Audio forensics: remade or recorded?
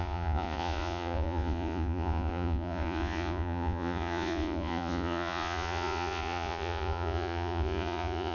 remade